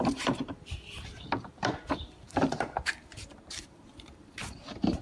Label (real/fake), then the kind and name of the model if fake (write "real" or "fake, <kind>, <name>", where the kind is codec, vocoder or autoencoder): fake, vocoder, BigVGAN v2